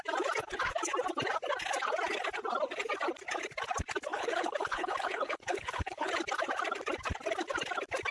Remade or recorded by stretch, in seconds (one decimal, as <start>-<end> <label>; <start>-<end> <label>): 0.0-4.1 recorded; 4.1-6.1 remade; 6.1-8.1 recorded